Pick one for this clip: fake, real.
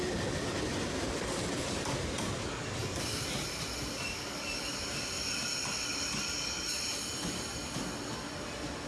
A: real